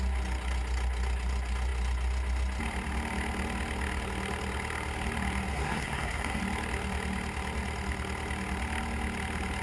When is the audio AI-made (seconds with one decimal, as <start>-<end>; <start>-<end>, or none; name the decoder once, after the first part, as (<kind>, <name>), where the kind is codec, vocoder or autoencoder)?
5.5-6.4 (codec, SNAC)